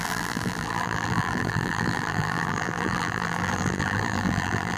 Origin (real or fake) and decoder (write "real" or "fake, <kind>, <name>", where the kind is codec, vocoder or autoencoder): fake, vocoder, BigVGAN v2